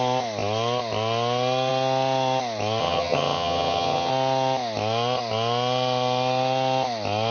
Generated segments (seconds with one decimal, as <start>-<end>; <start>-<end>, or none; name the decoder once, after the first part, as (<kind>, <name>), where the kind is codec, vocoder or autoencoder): 2.8-4.1 (vocoder, HiFi-GAN)